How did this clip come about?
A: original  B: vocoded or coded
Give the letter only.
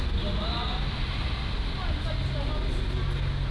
A